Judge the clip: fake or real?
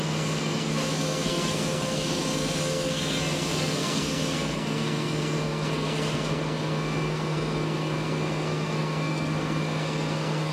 fake